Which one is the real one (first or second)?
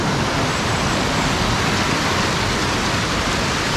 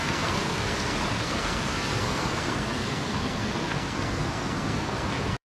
first